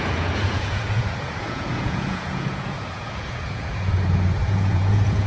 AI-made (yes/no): yes